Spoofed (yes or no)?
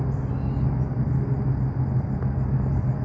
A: no